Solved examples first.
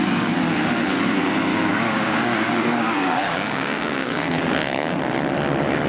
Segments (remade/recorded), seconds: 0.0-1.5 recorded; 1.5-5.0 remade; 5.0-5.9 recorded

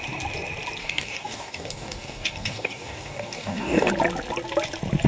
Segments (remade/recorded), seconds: 0.0-0.8 recorded; 0.8-3.9 remade; 3.9-5.1 recorded

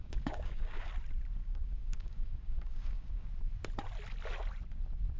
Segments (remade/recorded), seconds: 0.0-0.9 remade; 0.9-1.4 recorded; 1.4-3.3 remade; 3.3-5.2 recorded

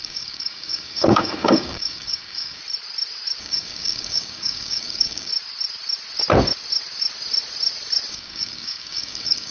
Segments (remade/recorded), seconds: 0.0-2.6 remade; 2.6-3.4 recorded; 3.4-5.3 remade; 5.3-8.1 recorded; 8.1-9.5 remade